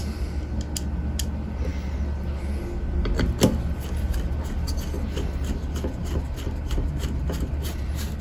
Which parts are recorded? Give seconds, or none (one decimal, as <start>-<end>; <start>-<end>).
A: 0.0-8.2